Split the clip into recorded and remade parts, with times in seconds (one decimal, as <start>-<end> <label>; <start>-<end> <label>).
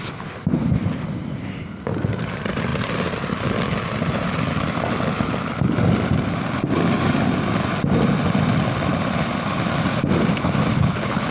0.0-10.7 recorded; 10.7-11.3 remade